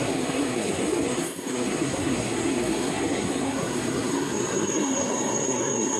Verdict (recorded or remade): remade